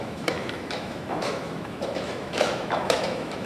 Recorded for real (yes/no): no